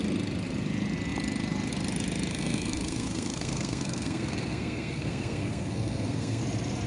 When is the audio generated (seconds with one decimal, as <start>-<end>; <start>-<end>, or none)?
2.3-6.4